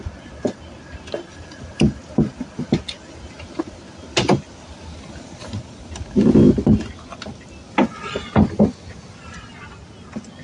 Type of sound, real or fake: real